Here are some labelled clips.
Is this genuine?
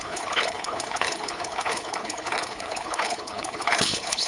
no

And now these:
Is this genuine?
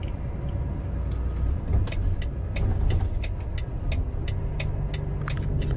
yes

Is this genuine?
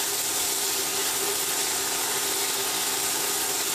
yes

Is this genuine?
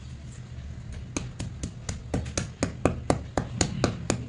yes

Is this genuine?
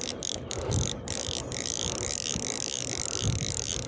yes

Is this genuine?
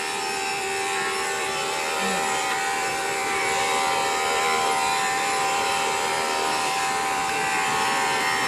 no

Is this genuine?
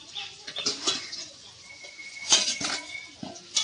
no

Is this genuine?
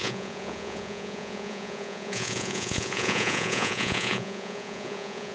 no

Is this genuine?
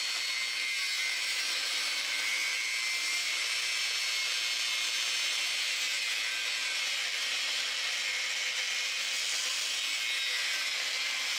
yes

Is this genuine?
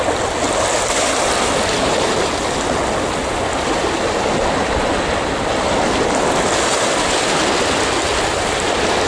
yes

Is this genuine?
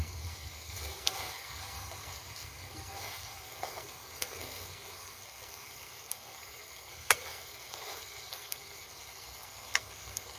no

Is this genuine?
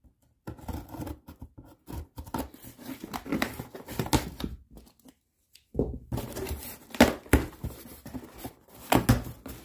yes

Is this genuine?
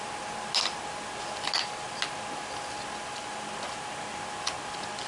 yes